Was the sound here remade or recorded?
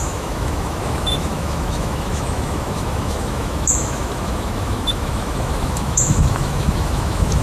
remade